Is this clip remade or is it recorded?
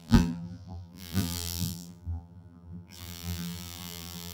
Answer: remade